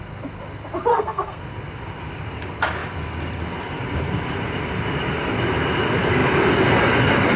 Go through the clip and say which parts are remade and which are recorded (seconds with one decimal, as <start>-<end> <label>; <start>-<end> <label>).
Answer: 0.0-0.9 recorded; 0.9-1.4 remade; 1.4-7.4 recorded